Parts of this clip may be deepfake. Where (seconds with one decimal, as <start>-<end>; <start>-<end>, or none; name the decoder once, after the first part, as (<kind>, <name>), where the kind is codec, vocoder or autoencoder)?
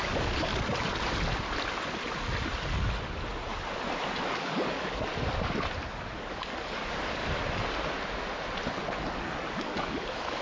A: 0.0-0.5 (codec, DAC); 4.3-5.1; 5.9-7.2; 9.2-10.4